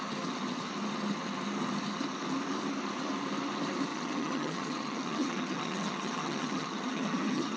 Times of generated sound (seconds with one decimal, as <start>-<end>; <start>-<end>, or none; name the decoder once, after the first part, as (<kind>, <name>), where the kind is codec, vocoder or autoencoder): 3.9-7.6 (vocoder, HiFi-GAN)